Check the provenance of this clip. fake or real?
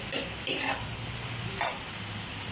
real